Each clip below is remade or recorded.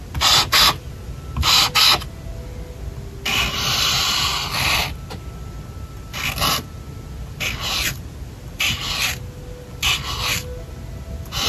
recorded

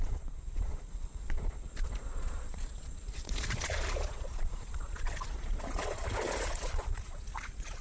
remade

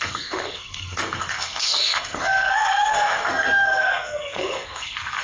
remade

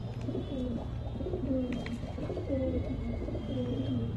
recorded